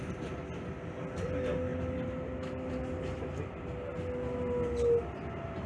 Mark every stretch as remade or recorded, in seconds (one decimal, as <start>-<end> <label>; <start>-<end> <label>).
0.0-5.7 recorded